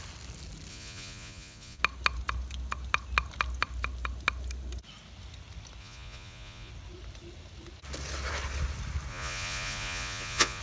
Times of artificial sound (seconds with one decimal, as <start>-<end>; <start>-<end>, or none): 0.7-1.8; 5.8-6.7; 9.1-10.6